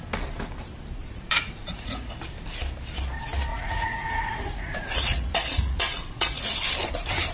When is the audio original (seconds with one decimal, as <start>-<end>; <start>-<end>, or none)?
0.0-1.0; 2.2-3.5; 6.5-7.3